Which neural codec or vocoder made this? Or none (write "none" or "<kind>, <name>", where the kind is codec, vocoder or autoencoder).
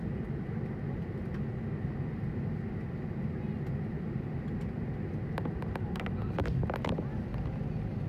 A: none